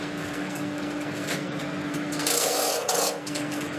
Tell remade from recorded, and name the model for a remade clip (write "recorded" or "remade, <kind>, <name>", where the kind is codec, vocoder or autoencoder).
remade, codec, SNAC